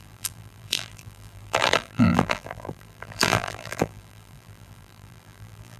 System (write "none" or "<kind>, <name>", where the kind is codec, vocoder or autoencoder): vocoder, BigVGAN v2